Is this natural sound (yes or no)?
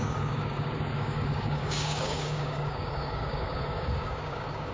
no